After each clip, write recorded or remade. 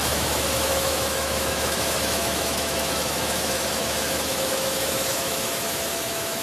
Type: remade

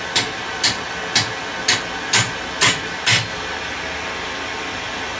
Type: recorded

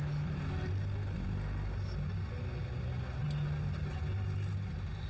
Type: recorded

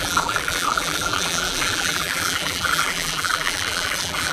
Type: remade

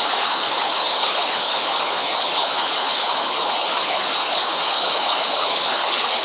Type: remade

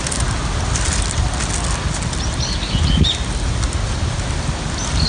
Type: recorded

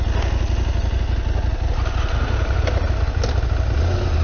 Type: recorded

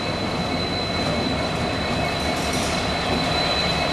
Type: recorded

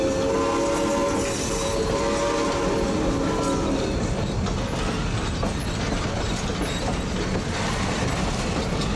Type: recorded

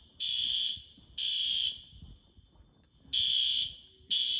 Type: recorded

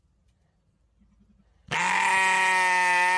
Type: recorded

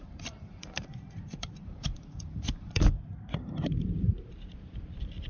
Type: remade